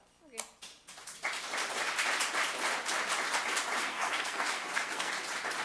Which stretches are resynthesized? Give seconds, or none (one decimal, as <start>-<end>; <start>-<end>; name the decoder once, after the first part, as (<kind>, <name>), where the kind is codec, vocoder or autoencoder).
3.8-5.1 (codec, SNAC)